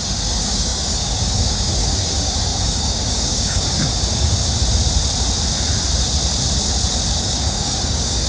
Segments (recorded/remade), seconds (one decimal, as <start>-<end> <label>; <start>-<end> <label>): 0.0-4.4 remade; 4.4-7.2 recorded; 7.2-8.3 remade